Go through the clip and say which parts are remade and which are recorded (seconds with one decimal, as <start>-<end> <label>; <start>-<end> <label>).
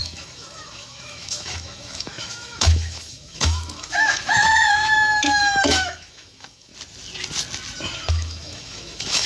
0.0-6.7 remade; 6.7-8.1 recorded; 8.1-9.3 remade